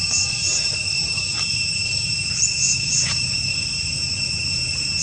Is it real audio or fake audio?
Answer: fake